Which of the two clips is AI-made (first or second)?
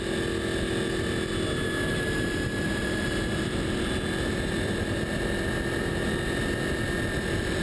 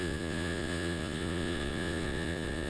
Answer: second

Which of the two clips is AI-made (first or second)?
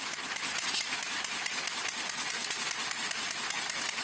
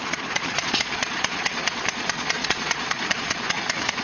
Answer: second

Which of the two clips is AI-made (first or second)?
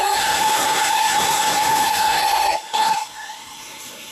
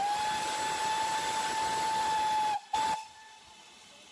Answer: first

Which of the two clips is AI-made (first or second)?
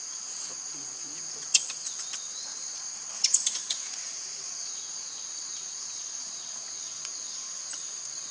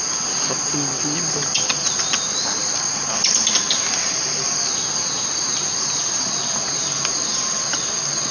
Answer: first